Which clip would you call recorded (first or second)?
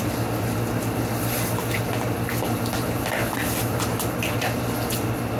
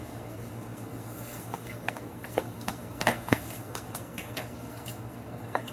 first